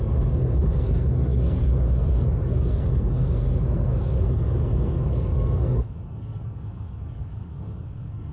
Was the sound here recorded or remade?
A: remade